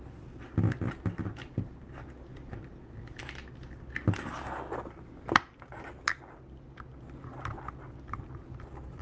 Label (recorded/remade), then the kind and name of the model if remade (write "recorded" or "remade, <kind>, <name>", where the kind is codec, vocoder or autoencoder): recorded